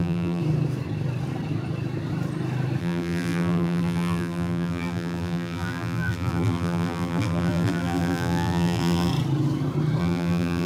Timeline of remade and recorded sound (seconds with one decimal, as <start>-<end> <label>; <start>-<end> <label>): 0.0-0.4 remade; 0.4-2.8 recorded; 2.8-9.1 remade; 9.1-10.0 recorded; 10.0-10.7 remade